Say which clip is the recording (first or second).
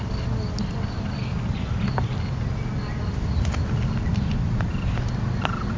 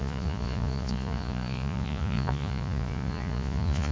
first